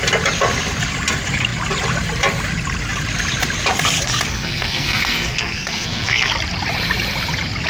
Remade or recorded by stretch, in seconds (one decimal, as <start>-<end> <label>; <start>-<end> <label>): 0.0-4.3 recorded; 4.3-6.3 remade; 6.3-7.7 recorded